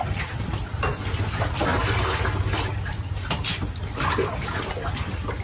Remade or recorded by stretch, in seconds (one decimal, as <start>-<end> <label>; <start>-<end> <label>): 0.0-5.4 recorded